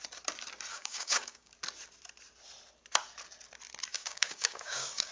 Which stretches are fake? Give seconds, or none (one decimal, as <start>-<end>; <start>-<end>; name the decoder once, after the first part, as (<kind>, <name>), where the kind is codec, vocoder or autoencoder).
0.7-1.5 (codec, DAC); 3.9-5.1